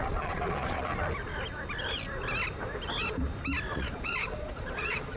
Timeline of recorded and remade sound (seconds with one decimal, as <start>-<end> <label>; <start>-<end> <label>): 0.0-0.9 remade; 0.9-3.7 recorded; 3.7-5.2 remade

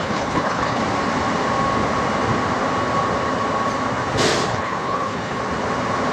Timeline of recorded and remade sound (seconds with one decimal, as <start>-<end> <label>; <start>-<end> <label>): 0.0-0.8 remade; 0.8-4.5 recorded; 4.5-5.4 remade; 5.4-6.1 recorded

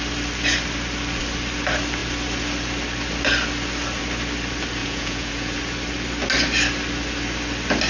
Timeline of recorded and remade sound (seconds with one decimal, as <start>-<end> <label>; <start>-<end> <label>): 0.0-4.8 recorded; 4.8-5.6 remade; 5.6-7.9 recorded

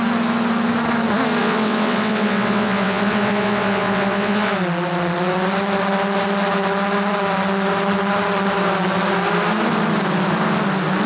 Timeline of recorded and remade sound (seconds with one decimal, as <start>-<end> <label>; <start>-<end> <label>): 0.0-1.4 recorded; 1.4-4.5 remade; 4.5-11.1 recorded

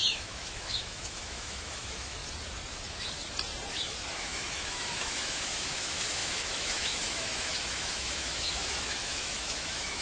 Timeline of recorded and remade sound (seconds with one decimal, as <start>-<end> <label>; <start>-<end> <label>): 0.0-2.2 remade; 2.2-3.7 recorded; 3.7-10.0 remade

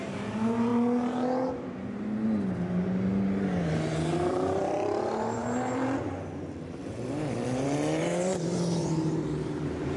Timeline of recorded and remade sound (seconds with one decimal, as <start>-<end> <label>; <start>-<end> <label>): 0.0-0.7 remade; 0.7-4.3 recorded; 4.3-10.0 remade

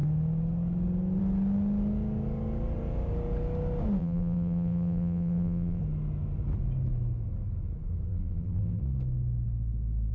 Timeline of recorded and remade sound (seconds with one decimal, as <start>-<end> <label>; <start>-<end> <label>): 0.0-4.0 recorded; 4.0-5.8 remade; 5.8-8.1 recorded; 8.1-8.8 remade; 8.8-10.1 recorded